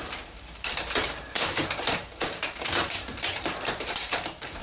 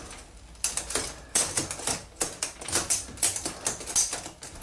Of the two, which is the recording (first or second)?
second